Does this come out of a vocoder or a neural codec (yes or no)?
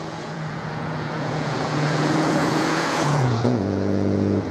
yes